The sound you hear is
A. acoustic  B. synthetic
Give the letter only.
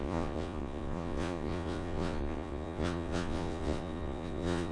B